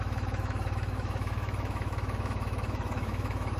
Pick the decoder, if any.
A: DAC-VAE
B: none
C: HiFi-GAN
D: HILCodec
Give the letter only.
A